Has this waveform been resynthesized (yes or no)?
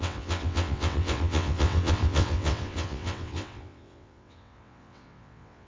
yes